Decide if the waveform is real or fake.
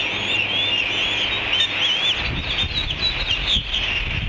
real